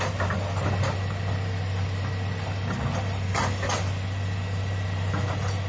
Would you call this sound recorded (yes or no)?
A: yes